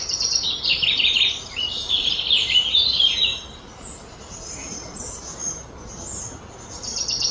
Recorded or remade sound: recorded